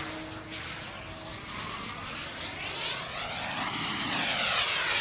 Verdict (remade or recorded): recorded